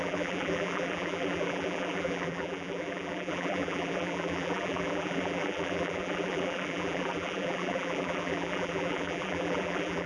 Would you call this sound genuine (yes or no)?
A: no